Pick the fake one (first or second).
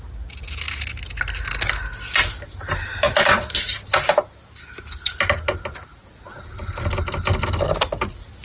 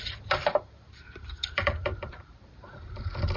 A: second